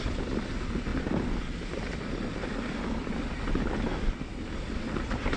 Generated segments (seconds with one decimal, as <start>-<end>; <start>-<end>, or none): none